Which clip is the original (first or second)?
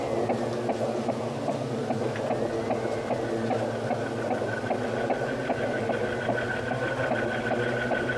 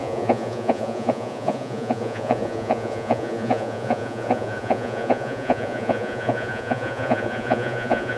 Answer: first